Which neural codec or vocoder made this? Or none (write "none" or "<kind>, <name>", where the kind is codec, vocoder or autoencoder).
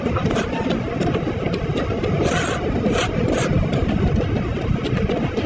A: none